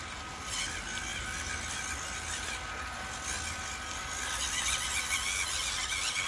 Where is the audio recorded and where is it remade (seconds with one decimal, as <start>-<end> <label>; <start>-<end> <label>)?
0.0-6.3 recorded

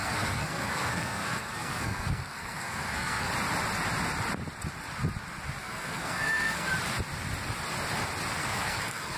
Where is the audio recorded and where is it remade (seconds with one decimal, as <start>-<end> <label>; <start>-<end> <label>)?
0.0-3.3 remade; 3.3-5.6 recorded; 5.6-6.7 remade; 6.7-8.4 recorded; 8.4-9.2 remade

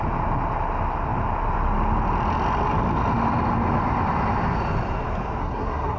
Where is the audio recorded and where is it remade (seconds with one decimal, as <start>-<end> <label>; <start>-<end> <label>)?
0.0-5.4 recorded; 5.4-6.0 remade

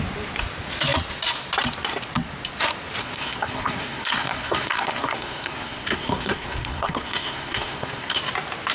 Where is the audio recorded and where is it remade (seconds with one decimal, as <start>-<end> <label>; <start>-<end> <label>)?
0.0-3.0 recorded; 3.0-8.2 remade; 8.2-8.7 recorded

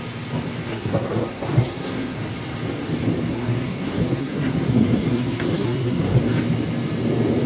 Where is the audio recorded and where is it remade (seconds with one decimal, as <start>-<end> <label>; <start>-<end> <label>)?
0.0-0.7 recorded; 0.7-2.2 remade; 2.2-3.3 recorded; 3.3-6.2 remade; 6.2-7.5 recorded

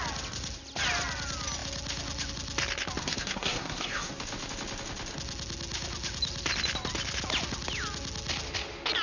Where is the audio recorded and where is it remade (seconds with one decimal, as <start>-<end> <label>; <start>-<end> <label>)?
0.0-3.0 recorded; 3.0-4.1 remade; 4.1-9.0 recorded

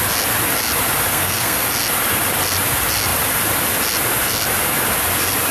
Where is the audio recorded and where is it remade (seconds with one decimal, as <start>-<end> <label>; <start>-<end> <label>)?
0.0-1.1 recorded; 1.1-1.7 remade; 1.7-5.5 recorded